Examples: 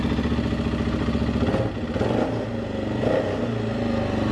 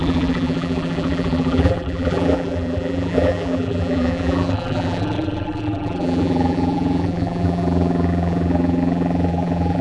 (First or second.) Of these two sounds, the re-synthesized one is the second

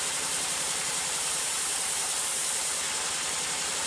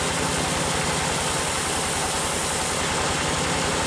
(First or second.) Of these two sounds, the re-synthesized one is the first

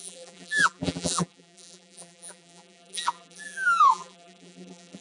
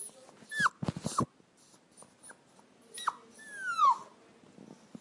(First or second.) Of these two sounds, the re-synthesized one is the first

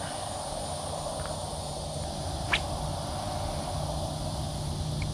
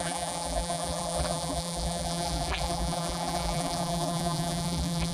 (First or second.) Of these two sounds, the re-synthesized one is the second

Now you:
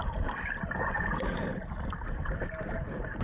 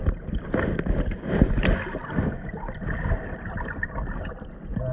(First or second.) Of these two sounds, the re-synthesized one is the first